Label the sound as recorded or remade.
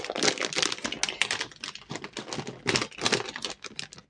recorded